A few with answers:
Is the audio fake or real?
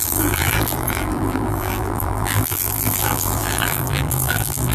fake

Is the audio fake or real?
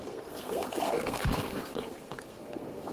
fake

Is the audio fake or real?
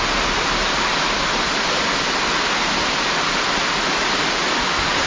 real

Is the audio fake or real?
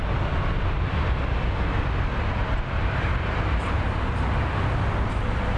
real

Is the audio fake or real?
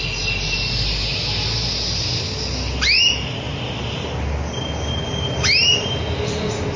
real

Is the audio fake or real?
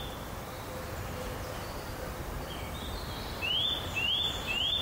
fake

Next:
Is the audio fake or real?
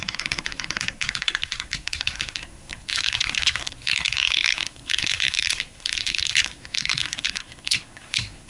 fake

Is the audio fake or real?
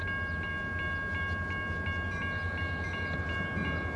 real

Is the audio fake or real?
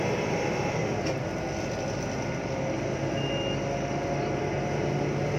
real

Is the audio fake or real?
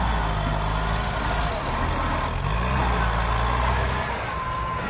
real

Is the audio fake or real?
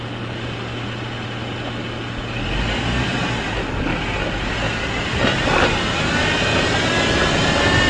real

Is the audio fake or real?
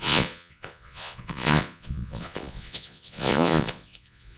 fake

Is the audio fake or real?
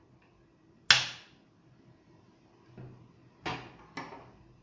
real